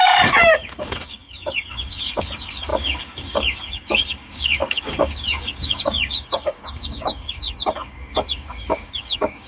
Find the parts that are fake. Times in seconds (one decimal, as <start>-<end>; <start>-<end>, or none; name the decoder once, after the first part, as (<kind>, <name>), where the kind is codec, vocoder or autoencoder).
0.0-9.5 (codec, DAC)